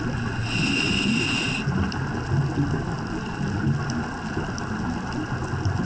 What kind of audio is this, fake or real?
real